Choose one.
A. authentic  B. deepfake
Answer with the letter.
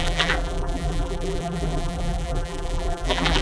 B